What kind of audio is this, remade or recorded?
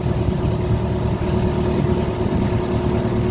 recorded